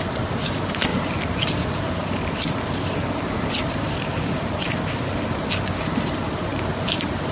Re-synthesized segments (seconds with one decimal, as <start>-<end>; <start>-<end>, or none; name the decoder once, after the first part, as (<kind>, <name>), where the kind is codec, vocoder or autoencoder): 0.9-4.8 (vocoder, BigVGAN v2)